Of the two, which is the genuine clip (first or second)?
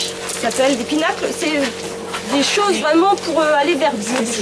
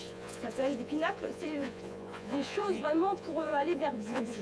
first